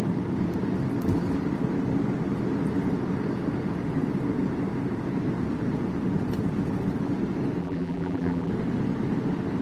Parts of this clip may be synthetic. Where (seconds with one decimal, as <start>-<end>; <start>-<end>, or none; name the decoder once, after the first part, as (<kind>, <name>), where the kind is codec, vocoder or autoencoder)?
7.6-8.5 (vocoder, BigVGAN v2)